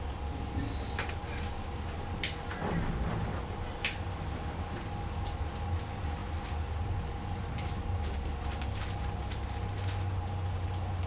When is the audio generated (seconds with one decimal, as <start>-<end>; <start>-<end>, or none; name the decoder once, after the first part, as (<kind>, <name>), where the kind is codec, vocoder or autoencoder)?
none